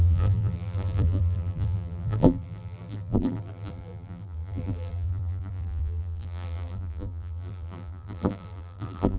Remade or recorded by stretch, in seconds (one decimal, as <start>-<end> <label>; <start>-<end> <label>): 0.0-9.2 remade